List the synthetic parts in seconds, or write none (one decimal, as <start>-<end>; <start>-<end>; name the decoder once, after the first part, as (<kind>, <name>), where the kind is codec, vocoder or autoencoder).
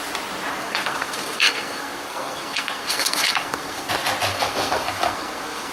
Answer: 0.5-3.9 (codec, SNAC); 4.3-5.7